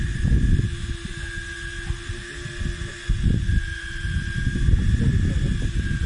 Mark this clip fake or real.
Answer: real